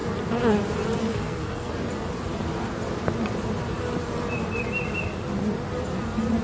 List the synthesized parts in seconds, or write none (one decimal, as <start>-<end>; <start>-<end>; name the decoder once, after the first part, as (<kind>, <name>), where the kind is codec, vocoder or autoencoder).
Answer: 1.0-1.7 (codec, SNAC)